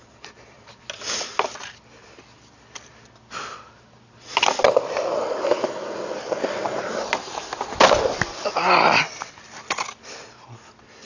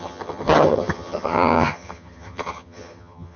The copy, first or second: second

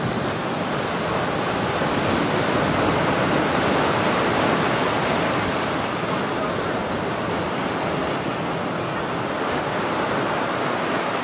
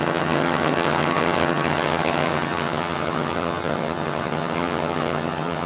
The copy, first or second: second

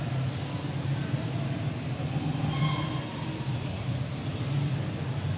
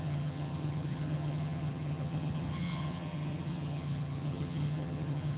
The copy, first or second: second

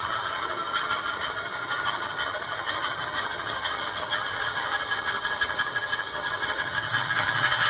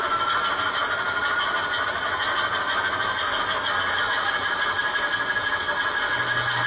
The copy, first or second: first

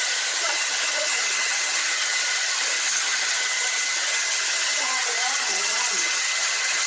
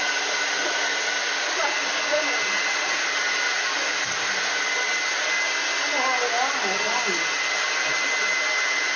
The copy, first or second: first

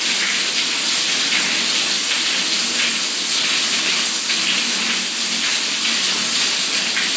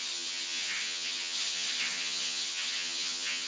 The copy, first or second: second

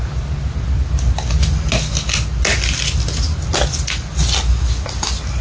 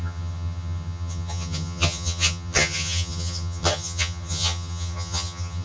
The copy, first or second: second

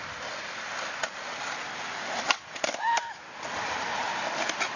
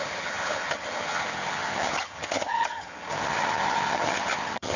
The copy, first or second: second